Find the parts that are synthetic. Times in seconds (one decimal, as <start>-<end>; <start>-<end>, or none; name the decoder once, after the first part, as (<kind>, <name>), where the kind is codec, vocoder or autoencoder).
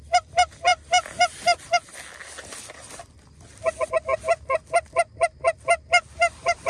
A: none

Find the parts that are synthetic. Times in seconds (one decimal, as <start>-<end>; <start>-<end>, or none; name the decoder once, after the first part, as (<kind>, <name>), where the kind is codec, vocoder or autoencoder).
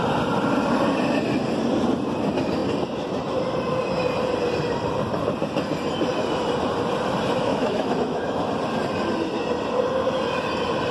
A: 7.5-8.4 (autoencoder, DAC-VAE)